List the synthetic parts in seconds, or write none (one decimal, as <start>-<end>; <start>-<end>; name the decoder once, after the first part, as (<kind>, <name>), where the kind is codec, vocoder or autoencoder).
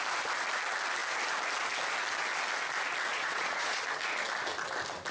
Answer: 3.1-3.8 (vocoder, Vocos)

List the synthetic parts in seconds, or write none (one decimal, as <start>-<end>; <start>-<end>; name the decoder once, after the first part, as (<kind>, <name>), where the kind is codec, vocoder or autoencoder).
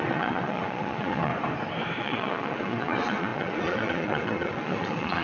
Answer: 0.0-1.3 (vocoder, Vocos); 2.0-5.2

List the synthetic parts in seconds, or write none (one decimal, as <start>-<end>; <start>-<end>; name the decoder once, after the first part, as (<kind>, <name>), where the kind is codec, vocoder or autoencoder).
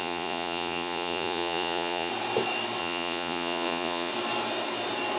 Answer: 0.0-2.1 (vocoder, Vocos); 2.8-4.1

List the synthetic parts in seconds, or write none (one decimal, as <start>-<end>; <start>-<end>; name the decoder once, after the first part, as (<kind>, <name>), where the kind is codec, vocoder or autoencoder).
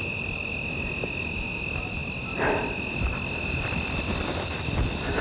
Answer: none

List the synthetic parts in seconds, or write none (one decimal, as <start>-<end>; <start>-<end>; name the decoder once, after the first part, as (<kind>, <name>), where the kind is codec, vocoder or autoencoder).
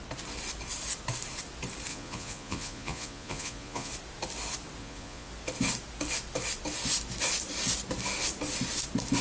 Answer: 1.9-3.9 (vocoder, Vocos); 4.8-5.3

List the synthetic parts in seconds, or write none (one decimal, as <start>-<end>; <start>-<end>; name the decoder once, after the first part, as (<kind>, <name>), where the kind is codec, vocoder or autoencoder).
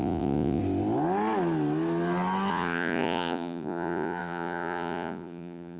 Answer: 0.0-0.6 (vocoder, Vocos); 2.5-5.8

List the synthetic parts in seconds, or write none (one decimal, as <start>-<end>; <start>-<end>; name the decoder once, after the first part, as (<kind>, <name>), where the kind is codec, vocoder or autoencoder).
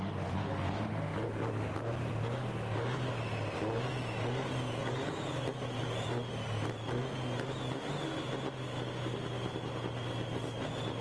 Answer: none